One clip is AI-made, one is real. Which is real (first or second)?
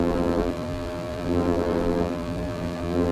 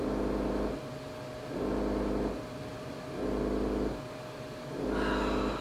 second